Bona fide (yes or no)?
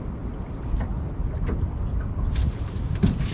yes